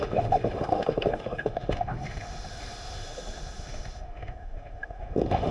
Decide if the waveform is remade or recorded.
remade